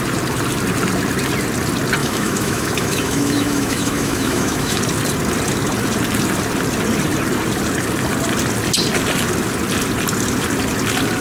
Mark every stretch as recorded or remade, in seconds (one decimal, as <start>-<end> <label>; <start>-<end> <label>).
0.0-2.0 recorded; 2.0-4.8 remade; 4.8-11.2 recorded